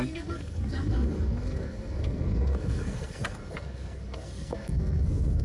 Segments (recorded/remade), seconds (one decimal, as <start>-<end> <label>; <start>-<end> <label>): 0.0-5.4 remade